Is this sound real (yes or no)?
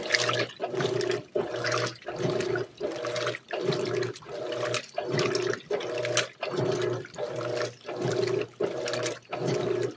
yes